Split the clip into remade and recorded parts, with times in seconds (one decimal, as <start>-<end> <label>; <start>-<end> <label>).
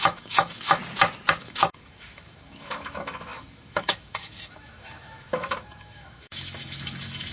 0.0-0.8 remade; 0.8-1.4 recorded; 1.4-7.3 remade